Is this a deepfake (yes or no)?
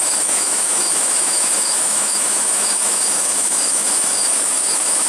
yes